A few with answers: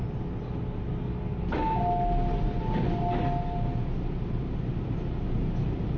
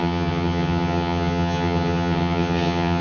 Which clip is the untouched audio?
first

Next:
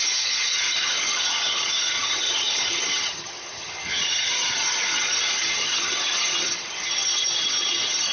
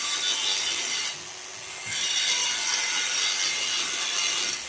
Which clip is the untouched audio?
second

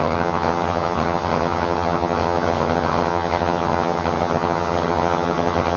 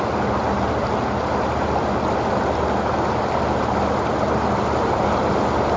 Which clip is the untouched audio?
second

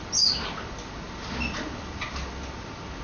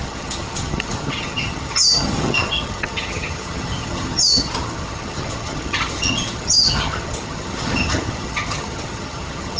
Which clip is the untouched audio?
first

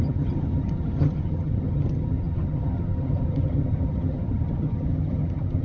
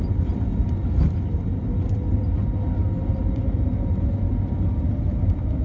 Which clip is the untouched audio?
second